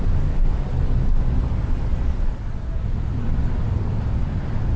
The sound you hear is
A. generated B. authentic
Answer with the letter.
B